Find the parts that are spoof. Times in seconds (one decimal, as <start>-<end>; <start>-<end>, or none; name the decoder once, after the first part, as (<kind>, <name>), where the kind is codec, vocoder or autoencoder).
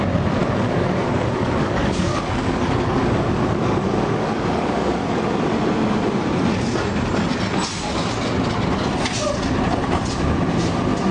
0.4-5.2 (codec, DAC)